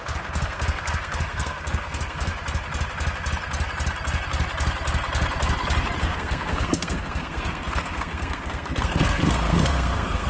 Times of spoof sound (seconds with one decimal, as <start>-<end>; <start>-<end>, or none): 0.0-2.3; 6.0-10.3